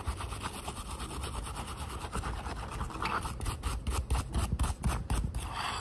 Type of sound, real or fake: real